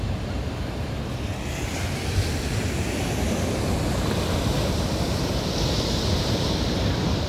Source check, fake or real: real